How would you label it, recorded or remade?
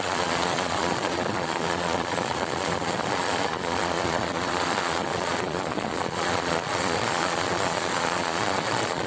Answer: remade